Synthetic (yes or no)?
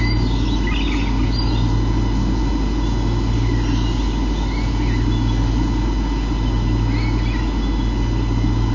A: no